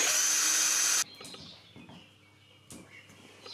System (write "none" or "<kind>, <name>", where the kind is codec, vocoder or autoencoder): none